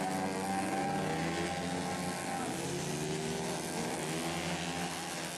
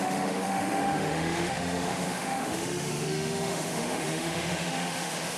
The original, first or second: first